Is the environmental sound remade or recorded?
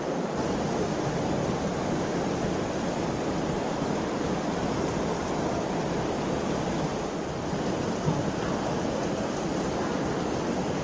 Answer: recorded